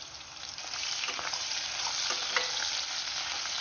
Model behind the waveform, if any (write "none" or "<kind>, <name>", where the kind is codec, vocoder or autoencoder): none